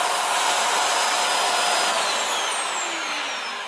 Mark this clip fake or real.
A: real